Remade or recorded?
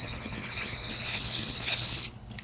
remade